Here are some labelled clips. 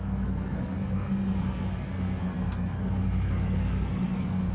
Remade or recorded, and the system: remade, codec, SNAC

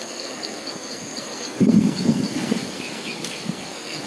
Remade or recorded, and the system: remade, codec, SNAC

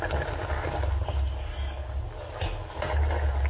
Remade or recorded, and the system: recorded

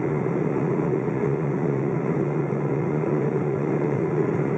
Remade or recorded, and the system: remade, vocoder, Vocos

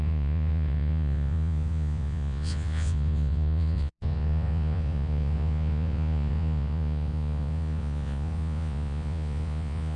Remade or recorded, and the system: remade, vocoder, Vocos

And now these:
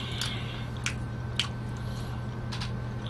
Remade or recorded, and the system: recorded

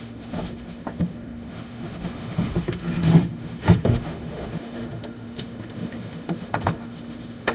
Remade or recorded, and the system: remade, autoencoder, DAC-VAE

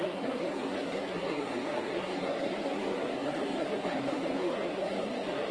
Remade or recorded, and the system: remade, codec, SNAC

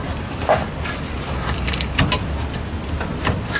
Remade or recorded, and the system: recorded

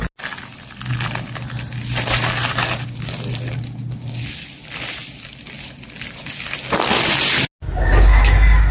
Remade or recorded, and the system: recorded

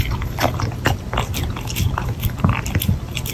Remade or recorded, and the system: remade, vocoder, BigVGAN v2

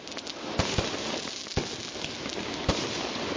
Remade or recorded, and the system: recorded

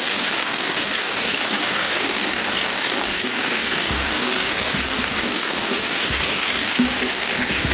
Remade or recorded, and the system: remade, codec, DAC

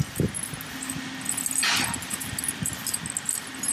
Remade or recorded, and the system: recorded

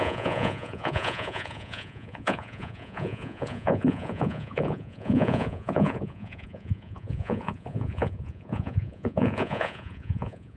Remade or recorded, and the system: remade, vocoder, Vocos